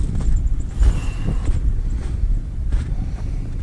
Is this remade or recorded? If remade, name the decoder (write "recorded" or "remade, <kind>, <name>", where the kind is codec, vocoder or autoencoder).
recorded